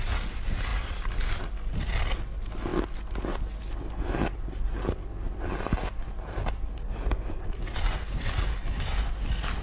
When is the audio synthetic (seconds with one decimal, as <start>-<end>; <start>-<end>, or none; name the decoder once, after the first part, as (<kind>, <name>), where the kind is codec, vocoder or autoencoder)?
none